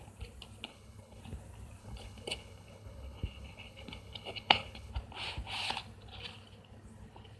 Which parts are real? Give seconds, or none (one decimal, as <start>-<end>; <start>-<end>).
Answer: 0.0-0.7; 1.2-1.8; 4.9-7.4